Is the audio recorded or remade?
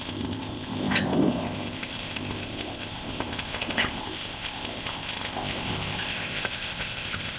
remade